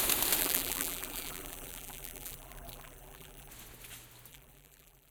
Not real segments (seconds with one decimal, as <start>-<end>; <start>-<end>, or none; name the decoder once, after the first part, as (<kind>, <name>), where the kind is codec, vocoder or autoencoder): 0.4-3.5 (vocoder, BigVGAN v2); 4.3-5.1